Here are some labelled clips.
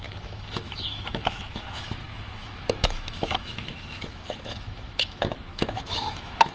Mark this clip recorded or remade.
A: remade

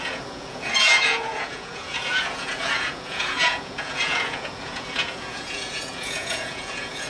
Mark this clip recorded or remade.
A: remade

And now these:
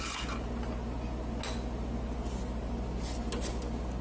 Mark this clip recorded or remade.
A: recorded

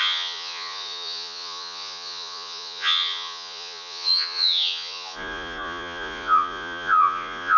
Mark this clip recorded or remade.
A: remade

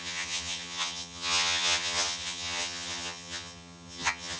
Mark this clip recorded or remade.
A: remade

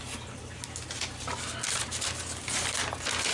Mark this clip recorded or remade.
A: recorded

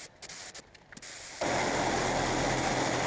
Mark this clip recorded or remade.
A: recorded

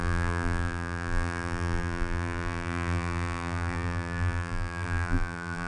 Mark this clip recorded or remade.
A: remade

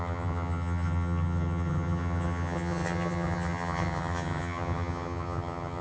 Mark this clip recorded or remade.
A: remade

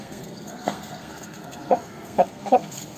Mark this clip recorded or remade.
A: remade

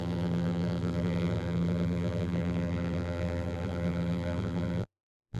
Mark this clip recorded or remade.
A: remade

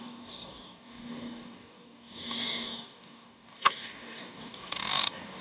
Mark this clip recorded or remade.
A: remade